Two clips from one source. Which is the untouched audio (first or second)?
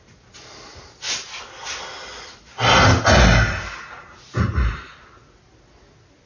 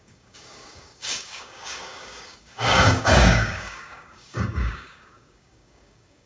first